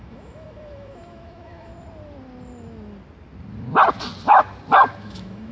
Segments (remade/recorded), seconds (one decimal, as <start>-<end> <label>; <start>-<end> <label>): 0.0-1.7 remade; 1.7-5.0 recorded; 5.0-5.5 remade